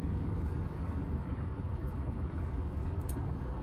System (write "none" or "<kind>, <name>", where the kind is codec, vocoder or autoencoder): codec, DAC